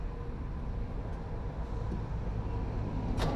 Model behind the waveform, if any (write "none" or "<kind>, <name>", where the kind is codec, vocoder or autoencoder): none